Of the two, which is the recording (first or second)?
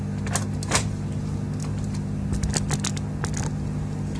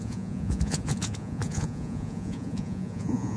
first